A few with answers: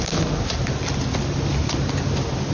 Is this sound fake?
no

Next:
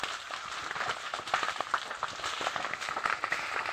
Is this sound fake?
yes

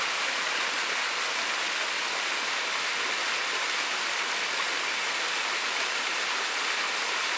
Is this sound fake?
no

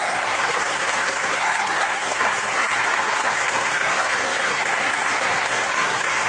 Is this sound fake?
yes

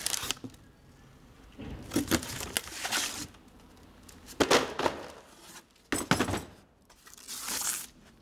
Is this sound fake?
no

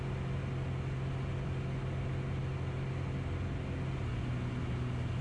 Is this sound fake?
no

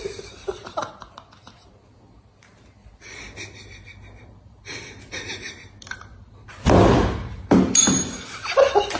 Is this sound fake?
no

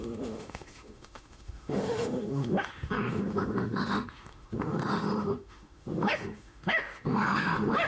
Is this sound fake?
yes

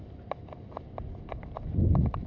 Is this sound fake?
no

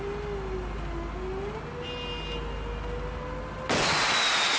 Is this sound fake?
no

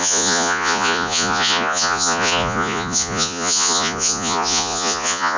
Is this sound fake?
yes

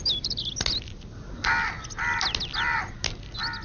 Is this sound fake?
no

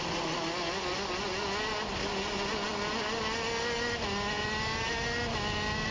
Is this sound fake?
no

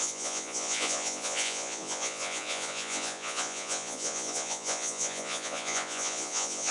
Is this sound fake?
yes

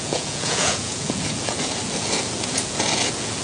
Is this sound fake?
yes